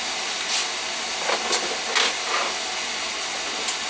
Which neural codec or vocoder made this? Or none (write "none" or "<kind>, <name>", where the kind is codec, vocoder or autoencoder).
none